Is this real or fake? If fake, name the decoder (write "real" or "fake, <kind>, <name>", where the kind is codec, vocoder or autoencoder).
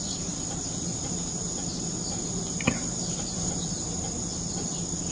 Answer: real